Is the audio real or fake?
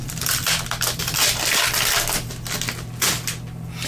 real